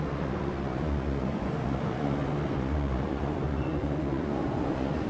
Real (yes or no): no